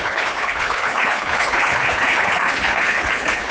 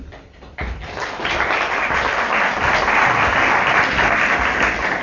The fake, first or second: first